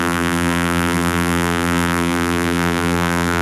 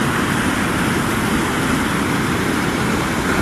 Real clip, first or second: second